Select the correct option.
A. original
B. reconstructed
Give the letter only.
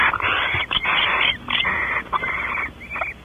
A